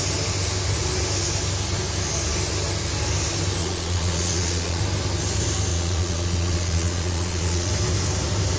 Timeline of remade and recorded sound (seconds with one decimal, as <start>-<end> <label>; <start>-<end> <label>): 0.0-3.6 recorded; 3.6-4.8 remade; 4.8-5.7 recorded; 5.7-7.7 remade; 7.7-8.6 recorded